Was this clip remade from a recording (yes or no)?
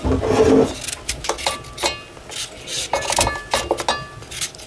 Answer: no